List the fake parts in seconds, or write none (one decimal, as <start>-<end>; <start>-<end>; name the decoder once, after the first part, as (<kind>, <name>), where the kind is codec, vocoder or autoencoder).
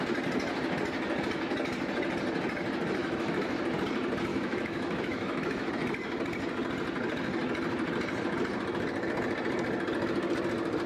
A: 3.0-3.6 (autoencoder, DAC-VAE); 4.3-5.7